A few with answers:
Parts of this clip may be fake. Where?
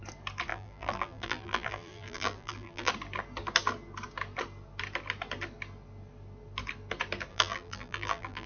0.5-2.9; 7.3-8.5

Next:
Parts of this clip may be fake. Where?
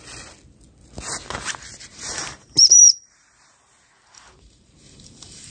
1.9-5.5